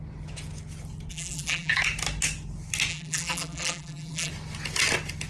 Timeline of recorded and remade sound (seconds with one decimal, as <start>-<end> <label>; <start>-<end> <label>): 0.0-1.1 recorded; 1.1-1.7 remade; 1.7-2.9 recorded; 2.9-4.3 remade; 4.3-5.3 recorded

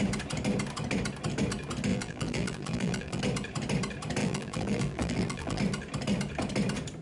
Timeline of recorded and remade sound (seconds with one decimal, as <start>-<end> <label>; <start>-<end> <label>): 0.0-1.9 recorded; 1.9-3.2 remade; 3.2-4.2 recorded; 4.2-5.6 remade; 5.6-7.0 recorded